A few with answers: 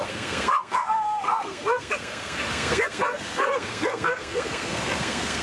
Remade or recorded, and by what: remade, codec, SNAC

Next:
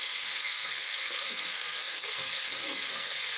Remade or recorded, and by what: remade, codec, SNAC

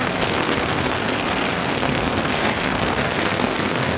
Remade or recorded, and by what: remade, codec, SNAC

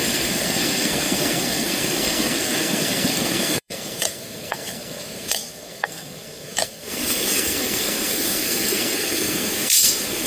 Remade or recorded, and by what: remade, codec, SNAC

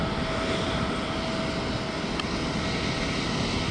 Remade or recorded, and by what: recorded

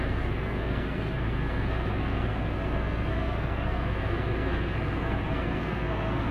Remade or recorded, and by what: remade, codec, SNAC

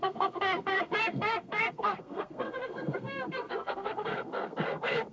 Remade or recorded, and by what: remade, codec, SNAC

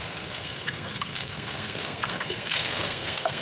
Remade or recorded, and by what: remade, codec, SNAC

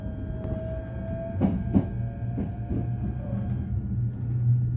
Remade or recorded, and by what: recorded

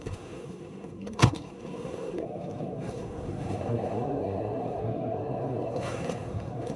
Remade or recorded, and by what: remade, codec, SNAC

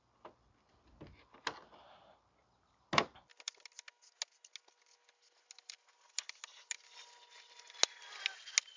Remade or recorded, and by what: recorded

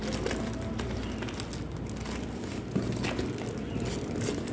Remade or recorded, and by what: recorded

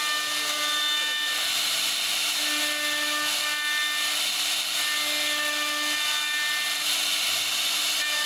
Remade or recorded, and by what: recorded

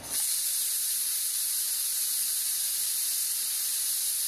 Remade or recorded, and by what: recorded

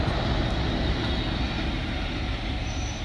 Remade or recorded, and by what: recorded